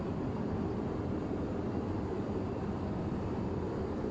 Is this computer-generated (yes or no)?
yes